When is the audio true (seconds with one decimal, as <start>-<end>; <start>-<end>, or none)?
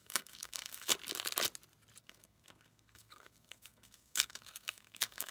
0.9-2.0